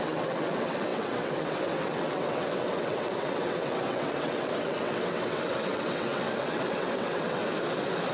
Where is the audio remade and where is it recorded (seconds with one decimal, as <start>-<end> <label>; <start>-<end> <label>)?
0.0-7.4 remade; 7.4-8.1 recorded